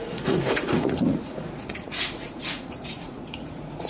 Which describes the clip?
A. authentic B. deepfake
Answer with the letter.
B